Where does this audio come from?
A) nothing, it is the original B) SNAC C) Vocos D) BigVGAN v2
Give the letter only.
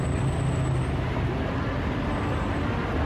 A